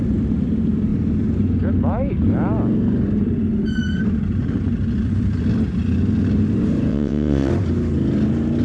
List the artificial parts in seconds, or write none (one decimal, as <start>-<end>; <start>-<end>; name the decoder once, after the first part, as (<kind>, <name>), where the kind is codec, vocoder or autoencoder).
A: 6.9-7.5 (vocoder, WaveNeXt)